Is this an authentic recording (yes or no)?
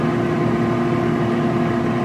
yes